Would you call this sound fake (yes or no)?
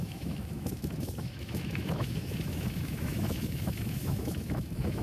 yes